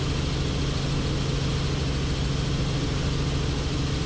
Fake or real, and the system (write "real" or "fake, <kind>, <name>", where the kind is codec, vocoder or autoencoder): real